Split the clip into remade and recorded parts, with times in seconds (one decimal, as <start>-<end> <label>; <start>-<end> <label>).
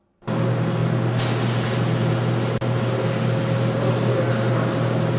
0.0-5.2 recorded